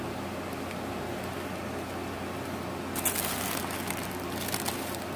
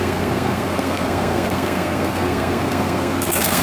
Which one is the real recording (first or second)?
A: first